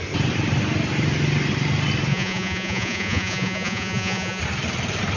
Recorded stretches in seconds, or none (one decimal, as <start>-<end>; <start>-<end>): 0.0-2.1; 4.4-5.2

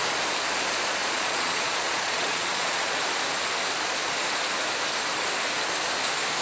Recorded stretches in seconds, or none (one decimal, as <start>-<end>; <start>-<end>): 0.0-1.0; 3.0-6.4